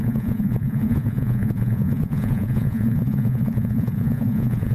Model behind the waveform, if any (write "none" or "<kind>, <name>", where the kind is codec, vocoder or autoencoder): vocoder, Vocos